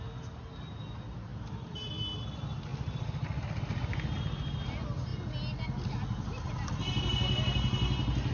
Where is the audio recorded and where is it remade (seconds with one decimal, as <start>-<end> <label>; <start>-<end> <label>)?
0.0-8.3 recorded